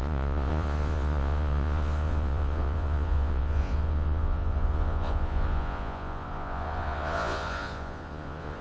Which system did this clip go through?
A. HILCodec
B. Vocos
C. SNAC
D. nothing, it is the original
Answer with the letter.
B